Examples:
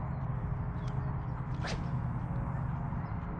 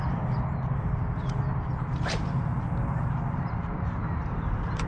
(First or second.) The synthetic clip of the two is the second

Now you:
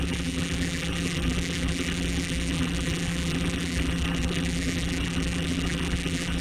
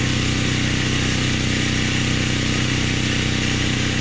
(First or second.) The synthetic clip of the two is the first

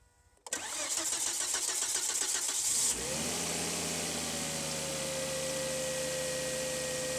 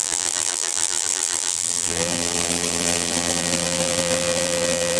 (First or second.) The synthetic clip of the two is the second